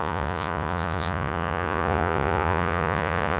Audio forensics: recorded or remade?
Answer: remade